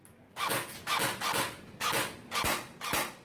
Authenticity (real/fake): real